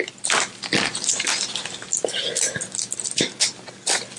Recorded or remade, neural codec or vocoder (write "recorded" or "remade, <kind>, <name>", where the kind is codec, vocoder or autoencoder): recorded